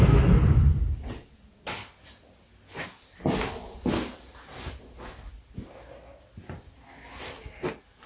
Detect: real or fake real